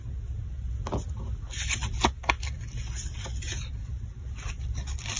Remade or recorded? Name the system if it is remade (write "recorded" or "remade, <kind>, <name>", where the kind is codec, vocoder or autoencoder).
recorded